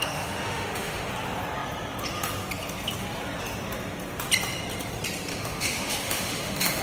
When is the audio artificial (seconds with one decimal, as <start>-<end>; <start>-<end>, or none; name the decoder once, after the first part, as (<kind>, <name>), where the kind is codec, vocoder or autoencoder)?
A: 0.0-1.1 (autoencoder, DAC-VAE); 5.3-6.8